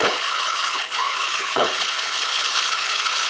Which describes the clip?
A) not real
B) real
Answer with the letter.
A